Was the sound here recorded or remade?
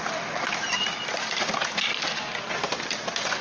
recorded